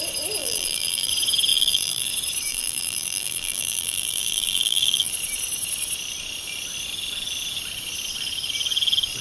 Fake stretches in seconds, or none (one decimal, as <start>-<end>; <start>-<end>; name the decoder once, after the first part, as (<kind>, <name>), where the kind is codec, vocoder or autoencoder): 0.4-1.1 (vocoder, BigVGAN v2); 1.5-2.1; 2.5-5.1

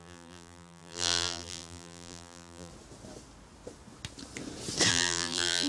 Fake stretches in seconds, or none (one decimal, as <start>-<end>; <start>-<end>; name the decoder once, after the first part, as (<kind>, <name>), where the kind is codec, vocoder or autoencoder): 0.0-2.7 (vocoder, BigVGAN v2); 4.9-5.7

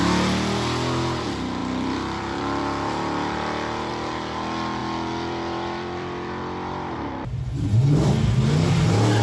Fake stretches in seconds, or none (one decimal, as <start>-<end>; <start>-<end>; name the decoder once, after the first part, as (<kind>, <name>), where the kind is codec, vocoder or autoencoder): 1.6-3.9 (vocoder, BigVGAN v2); 4.8-7.4